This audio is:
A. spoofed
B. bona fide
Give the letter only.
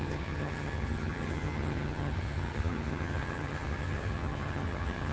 A